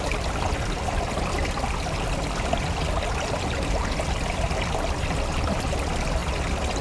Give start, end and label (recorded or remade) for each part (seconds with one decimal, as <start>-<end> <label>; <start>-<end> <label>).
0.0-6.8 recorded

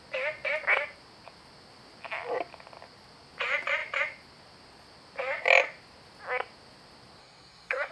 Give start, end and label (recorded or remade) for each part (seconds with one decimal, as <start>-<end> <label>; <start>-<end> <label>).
0.0-7.2 recorded; 7.2-7.9 remade

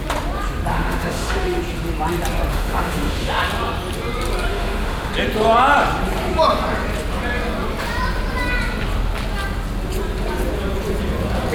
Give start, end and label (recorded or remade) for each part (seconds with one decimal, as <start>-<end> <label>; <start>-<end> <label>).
0.0-0.7 recorded; 0.7-1.6 remade; 1.6-2.5 recorded; 2.5-3.4 remade; 3.4-4.5 recorded; 4.5-5.1 remade; 5.1-11.5 recorded

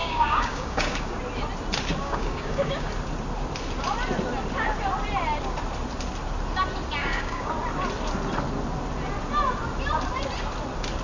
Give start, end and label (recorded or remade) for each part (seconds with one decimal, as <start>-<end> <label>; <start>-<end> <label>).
0.0-1.2 remade; 1.2-2.0 recorded; 2.0-2.9 remade; 2.9-7.0 recorded; 7.0-7.5 remade; 7.5-11.0 recorded